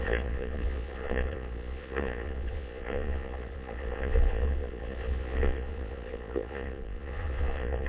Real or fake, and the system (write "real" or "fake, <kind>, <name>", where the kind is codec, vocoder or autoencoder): fake, vocoder, Vocos